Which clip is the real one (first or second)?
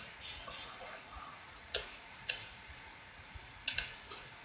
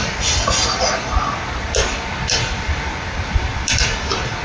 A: second